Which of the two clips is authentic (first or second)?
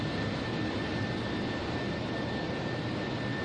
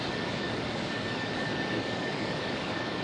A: first